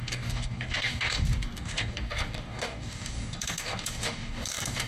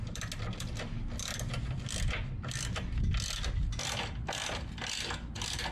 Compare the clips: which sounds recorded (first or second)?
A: second